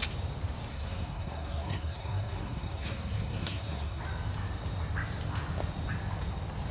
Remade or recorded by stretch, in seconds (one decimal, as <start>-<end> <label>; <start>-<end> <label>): 0.0-0.7 recorded; 0.7-4.0 remade; 4.0-6.7 recorded